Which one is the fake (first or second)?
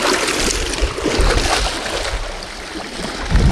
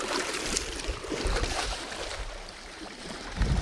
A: second